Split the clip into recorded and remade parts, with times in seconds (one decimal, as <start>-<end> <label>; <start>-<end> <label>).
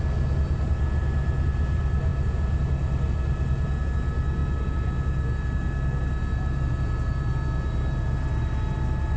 0.0-9.2 recorded